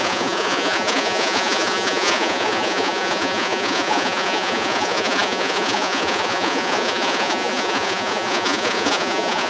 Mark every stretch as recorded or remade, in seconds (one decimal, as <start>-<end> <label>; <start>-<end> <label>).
0.0-9.5 remade